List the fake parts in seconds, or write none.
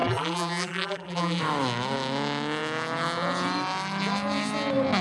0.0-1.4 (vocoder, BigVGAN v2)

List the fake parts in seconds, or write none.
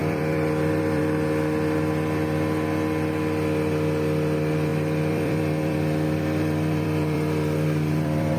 0.0-1.0 (vocoder, BigVGAN v2); 4.7-8.4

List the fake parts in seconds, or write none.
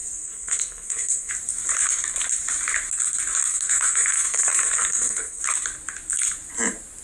0.0-1.3 (codec, SNAC); 3.5-5.4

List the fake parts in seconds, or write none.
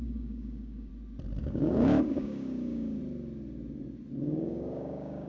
0.0-0.9 (codec, DAC); 1.4-3.0; 4.2-5.3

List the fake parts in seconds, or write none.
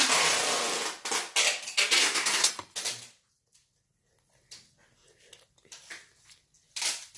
2.0-2.5 (codec, SNAC)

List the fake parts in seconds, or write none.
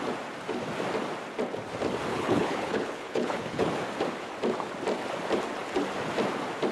2.1-3.7 (codec, HILCodec)